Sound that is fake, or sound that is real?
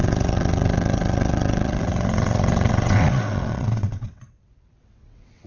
fake